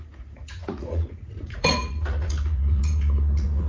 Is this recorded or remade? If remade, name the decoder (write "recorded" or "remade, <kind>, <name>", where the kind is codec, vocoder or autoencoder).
remade, vocoder, Vocos